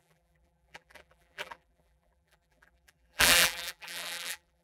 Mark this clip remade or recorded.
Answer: remade